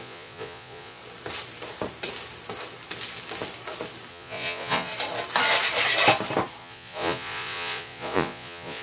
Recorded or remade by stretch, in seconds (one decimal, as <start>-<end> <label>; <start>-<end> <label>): 0.0-1.0 remade; 1.0-4.1 recorded; 4.1-4.9 remade; 4.9-6.6 recorded; 6.6-8.8 remade